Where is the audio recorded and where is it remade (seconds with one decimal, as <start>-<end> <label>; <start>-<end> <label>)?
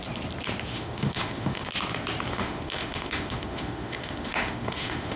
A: 0.0-0.7 recorded; 0.7-1.7 remade; 1.7-2.3 recorded; 2.3-5.2 remade